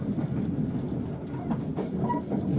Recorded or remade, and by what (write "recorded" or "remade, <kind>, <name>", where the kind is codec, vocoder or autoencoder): recorded